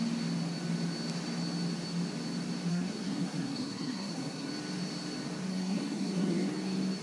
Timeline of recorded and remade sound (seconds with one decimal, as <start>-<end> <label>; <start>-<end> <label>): 0.0-2.7 recorded; 2.7-4.5 remade; 4.5-5.5 recorded; 5.5-6.5 remade; 6.5-7.0 recorded